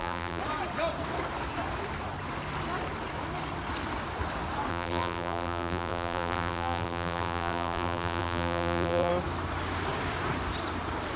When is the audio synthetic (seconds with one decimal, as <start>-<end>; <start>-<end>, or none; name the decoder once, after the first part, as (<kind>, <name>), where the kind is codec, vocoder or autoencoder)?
0.0-0.4 (vocoder, BigVGAN v2); 4.7-9.1